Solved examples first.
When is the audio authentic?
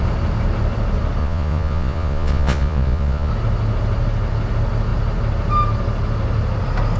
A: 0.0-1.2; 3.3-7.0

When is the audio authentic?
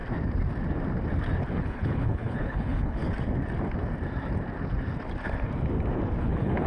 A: 0.0-1.5; 3.0-6.2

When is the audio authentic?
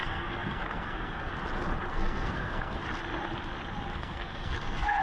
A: 1.3-1.9; 2.8-3.9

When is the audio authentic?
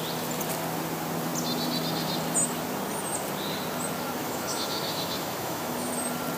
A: 0.0-4.2; 5.9-6.4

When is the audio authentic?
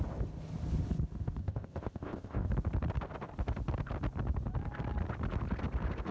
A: 0.0-1.4; 2.5-6.1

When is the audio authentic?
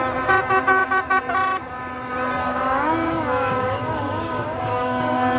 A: 0.0-2.4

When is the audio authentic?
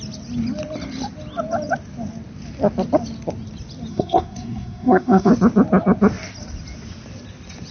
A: 0.0-3.9; 5.3-7.7